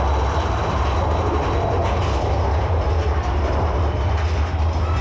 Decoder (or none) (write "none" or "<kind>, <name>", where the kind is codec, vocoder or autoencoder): none